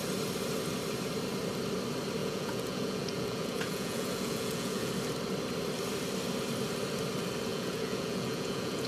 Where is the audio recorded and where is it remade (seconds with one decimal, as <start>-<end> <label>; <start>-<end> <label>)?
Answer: 0.0-2.2 recorded; 2.2-4.9 remade; 4.9-7.5 recorded; 7.5-8.9 remade